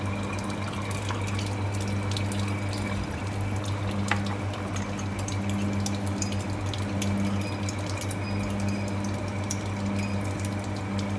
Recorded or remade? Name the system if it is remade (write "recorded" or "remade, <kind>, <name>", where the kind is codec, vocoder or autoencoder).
recorded